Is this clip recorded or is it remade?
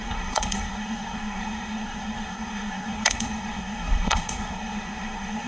remade